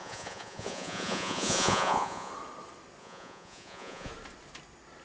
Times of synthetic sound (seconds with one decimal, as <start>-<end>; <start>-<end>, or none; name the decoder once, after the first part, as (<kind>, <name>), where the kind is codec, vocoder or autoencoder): 0.0-2.3 (vocoder, Vocos); 3.0-4.1